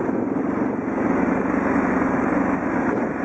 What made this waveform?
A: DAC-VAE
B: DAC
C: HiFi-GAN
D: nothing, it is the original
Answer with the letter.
D